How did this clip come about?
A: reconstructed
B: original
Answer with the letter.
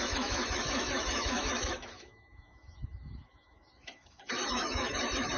A